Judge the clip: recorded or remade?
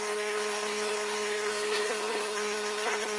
remade